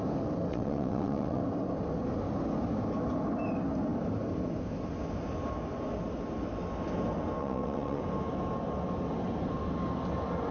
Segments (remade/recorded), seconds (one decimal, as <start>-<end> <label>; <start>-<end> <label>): 0.0-0.5 recorded; 0.5-1.4 remade; 1.4-7.4 recorded; 7.4-8.0 remade; 8.0-10.5 recorded